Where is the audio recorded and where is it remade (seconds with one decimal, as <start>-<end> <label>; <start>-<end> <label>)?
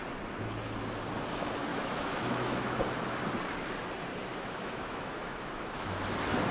0.0-1.7 recorded; 1.7-2.8 remade; 2.8-4.3 recorded; 4.3-6.0 remade; 6.0-6.5 recorded